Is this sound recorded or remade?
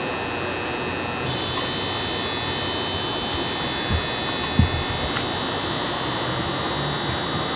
recorded